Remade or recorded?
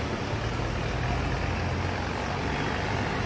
recorded